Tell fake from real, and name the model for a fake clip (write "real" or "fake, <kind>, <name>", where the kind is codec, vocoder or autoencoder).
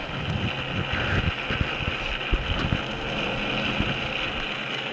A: real